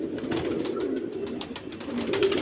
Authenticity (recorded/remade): remade